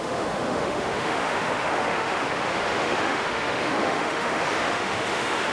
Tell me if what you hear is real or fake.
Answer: fake